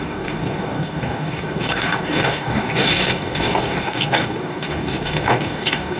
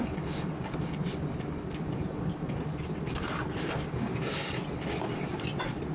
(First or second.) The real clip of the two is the second